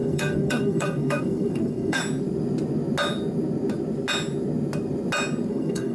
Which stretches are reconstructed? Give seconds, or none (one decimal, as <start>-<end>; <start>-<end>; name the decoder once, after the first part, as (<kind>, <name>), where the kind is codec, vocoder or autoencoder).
0.0-2.0 (codec, SNAC); 5.5-5.9